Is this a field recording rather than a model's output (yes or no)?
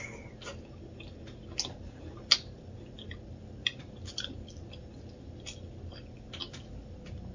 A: yes